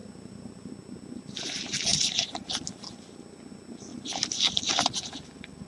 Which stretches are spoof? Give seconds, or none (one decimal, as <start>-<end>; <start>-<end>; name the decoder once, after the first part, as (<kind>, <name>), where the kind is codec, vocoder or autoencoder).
0.0-0.7 (vocoder, BigVGAN v2)